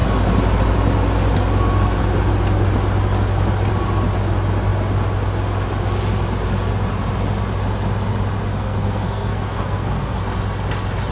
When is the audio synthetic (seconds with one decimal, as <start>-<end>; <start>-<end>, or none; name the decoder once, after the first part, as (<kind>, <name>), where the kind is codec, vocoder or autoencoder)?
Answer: 8.5-10.2 (codec, SNAC)